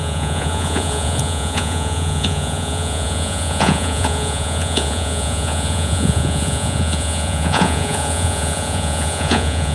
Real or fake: fake